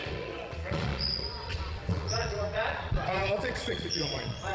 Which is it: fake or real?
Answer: fake